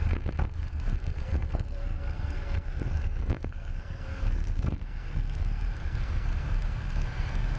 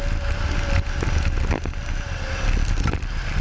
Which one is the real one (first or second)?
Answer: second